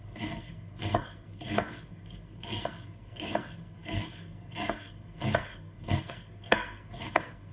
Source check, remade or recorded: remade